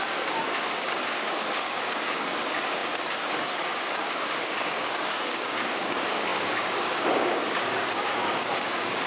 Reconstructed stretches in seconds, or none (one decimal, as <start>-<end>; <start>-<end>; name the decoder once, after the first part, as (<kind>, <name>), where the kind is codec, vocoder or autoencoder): 0.0-9.1 (codec, DAC)